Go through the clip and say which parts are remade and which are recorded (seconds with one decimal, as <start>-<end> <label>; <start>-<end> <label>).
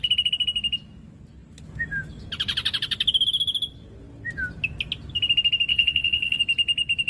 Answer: 0.0-5.7 recorded; 5.7-6.4 remade; 6.4-7.1 recorded